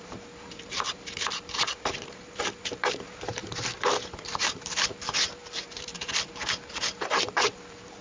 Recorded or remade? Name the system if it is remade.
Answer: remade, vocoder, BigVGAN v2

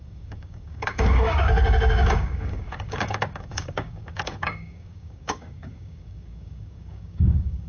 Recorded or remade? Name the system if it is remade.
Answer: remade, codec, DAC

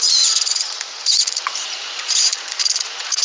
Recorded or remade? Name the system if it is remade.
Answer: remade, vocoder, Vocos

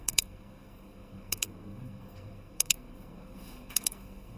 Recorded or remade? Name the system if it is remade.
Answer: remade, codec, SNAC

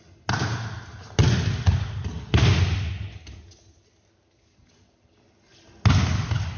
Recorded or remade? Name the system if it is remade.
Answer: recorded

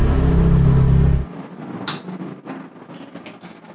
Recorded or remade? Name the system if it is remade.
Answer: recorded